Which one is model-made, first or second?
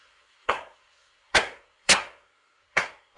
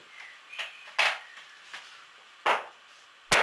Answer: first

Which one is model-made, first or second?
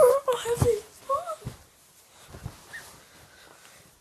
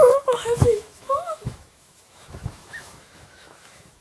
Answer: second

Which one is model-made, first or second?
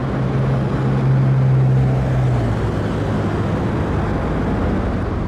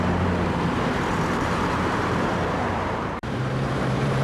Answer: second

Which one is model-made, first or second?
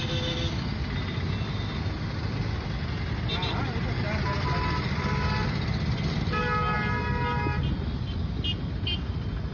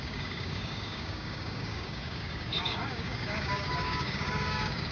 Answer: second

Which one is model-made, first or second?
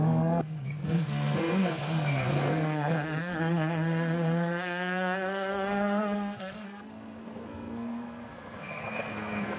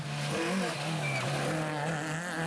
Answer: first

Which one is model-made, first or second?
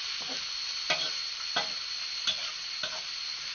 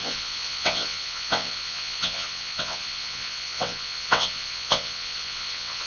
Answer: second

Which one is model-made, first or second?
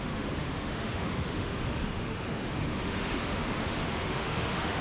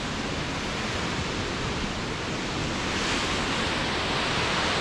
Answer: first